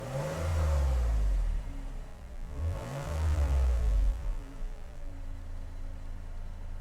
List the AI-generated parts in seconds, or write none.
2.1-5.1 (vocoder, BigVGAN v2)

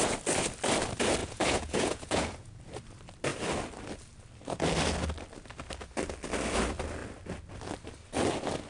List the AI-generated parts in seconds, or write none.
1.2-2.6 (vocoder, Vocos)